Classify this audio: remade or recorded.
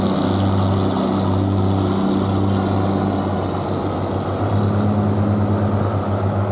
recorded